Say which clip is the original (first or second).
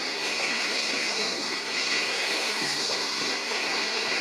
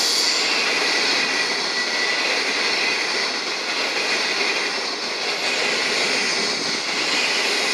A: second